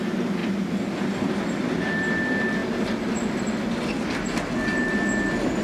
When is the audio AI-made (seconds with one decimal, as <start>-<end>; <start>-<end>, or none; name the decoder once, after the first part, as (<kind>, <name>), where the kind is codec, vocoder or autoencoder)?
none